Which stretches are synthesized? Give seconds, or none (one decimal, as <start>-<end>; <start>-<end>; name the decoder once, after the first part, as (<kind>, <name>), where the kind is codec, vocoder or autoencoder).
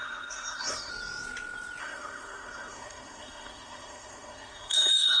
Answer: 0.0-0.9 (codec, SNAC); 1.8-5.2